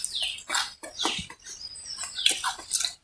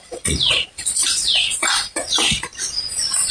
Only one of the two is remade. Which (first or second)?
second